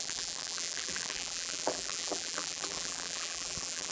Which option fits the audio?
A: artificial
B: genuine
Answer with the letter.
A